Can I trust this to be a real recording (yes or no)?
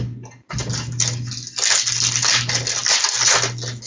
yes